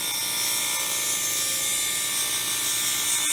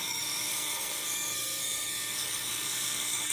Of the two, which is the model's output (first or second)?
second